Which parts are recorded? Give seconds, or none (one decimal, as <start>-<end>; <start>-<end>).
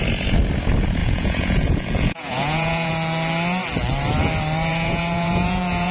0.0-1.0; 2.9-4.7